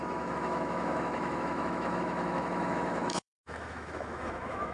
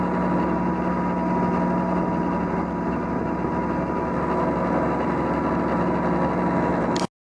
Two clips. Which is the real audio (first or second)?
second